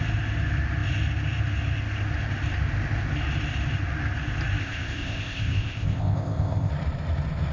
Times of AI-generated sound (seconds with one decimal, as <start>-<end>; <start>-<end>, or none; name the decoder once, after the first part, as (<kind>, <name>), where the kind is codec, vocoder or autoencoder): 4.6-6.7 (codec, ZipCodec)